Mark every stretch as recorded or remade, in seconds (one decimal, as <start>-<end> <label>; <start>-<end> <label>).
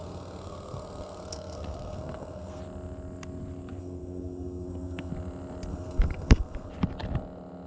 0.0-2.6 remade; 2.6-3.8 recorded; 3.8-5.1 remade; 5.1-5.7 recorded; 5.7-6.7 remade; 6.7-7.7 recorded